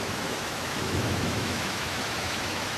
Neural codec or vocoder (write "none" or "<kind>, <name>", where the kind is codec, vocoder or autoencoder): autoencoder, DAC-VAE